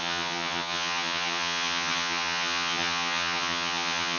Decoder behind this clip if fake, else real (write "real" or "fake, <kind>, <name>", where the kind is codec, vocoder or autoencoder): fake, vocoder, HiFi-GAN